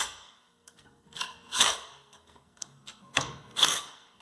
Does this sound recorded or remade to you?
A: remade